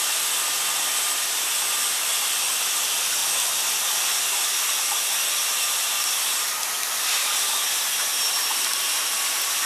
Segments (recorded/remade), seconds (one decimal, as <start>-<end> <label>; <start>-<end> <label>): 0.0-9.7 recorded